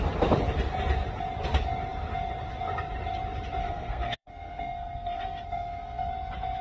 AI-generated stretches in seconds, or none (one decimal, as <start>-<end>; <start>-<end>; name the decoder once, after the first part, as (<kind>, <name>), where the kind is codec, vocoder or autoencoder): 3.6-6.1 (codec, SNAC)